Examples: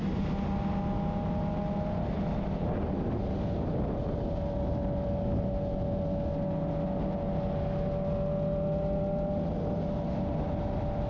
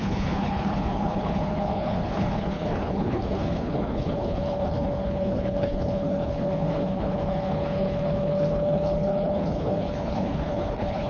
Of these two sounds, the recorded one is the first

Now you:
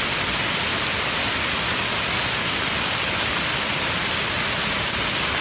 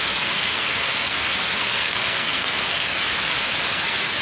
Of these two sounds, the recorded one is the first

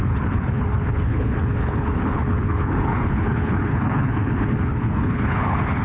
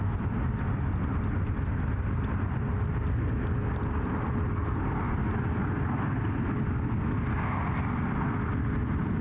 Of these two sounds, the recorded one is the second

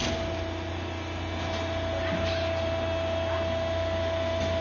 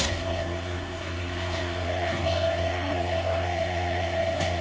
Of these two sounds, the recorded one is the first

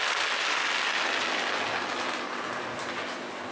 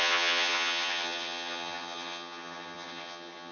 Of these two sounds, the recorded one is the first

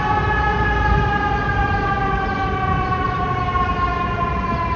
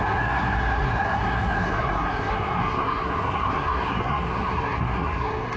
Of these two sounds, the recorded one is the first